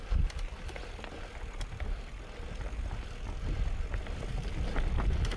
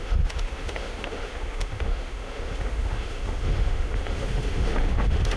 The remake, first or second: second